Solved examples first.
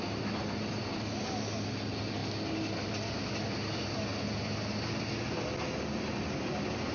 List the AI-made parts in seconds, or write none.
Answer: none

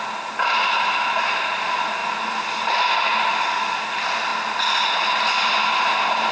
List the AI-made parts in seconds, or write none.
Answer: none

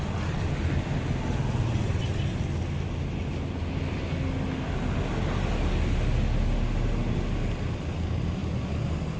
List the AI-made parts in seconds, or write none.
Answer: none

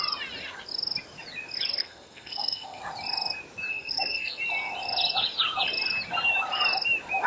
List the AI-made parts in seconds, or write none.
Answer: 1.8-2.8; 3.7-4.4

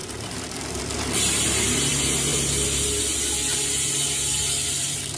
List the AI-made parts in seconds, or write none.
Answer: 0.0-2.3; 4.3-5.2

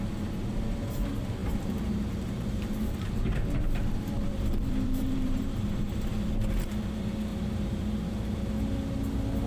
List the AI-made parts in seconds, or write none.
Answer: 1.4-6.1; 7.3-8.4